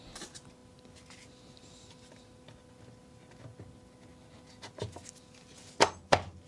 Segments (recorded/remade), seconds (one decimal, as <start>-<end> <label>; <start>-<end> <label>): 0.0-6.5 recorded